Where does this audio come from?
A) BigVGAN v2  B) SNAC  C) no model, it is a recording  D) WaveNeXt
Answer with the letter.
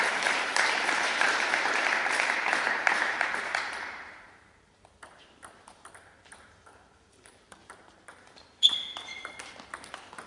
A